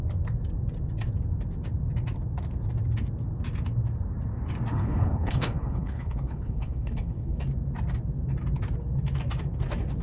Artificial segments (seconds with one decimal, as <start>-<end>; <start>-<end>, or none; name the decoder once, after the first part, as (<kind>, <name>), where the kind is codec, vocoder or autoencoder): 4.7-7.4 (codec, HILCodec)